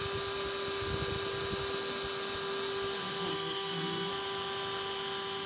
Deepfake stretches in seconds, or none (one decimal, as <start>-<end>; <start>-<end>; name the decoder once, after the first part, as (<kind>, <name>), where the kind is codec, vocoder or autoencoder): 3.3-4.1 (codec, SNAC)